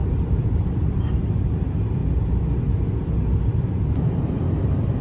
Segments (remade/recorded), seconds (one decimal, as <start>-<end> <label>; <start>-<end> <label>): 0.0-2.0 remade; 2.0-4.6 recorded; 4.6-5.0 remade